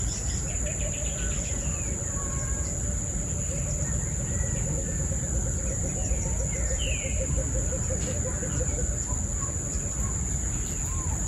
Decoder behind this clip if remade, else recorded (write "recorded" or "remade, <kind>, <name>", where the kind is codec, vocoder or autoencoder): recorded